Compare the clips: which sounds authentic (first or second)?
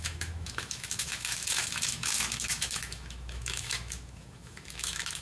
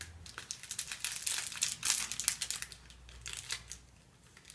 second